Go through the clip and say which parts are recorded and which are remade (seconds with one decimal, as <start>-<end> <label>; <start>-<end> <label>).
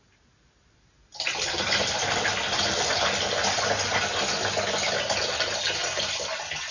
0.0-6.7 recorded